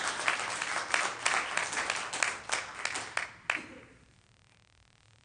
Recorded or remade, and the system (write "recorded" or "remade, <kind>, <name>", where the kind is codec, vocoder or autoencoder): recorded